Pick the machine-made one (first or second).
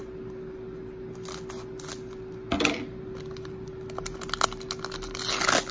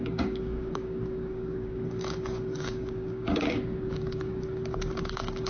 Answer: second